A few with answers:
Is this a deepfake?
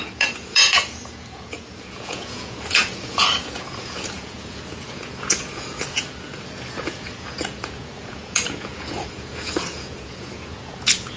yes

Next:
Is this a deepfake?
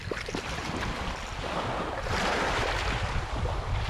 no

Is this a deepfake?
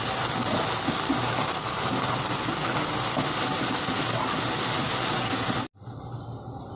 no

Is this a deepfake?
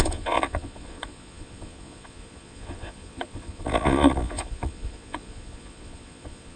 yes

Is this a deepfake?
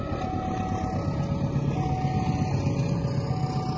no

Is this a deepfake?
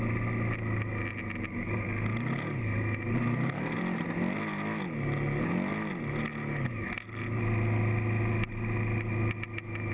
no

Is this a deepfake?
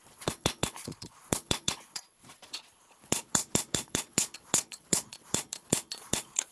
yes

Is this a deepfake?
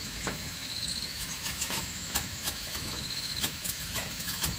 yes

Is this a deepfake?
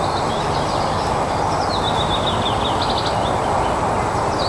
no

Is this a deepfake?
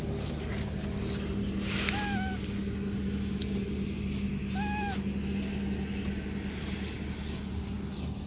no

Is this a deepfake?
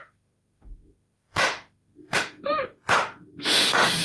yes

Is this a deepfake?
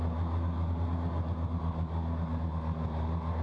no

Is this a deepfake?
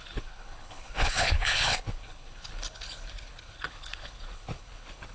yes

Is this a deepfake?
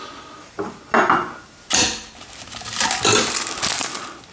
no